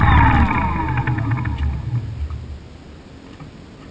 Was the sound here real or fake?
real